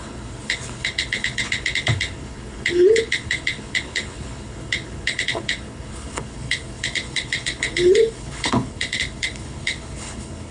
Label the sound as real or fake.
fake